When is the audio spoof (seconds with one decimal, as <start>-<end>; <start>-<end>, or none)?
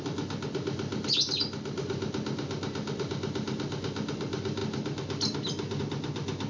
none